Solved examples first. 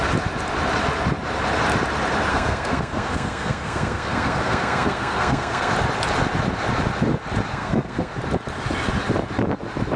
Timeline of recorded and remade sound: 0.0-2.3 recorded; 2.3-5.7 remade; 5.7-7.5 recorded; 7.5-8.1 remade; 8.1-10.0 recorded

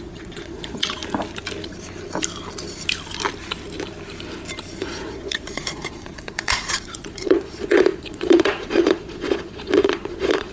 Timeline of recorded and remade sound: 0.0-1.0 remade; 1.0-4.8 recorded; 4.8-10.5 remade

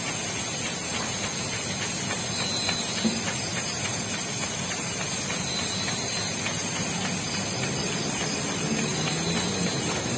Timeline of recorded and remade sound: 0.0-3.5 recorded; 3.5-4.0 remade; 4.0-9.6 recorded; 9.6-10.2 remade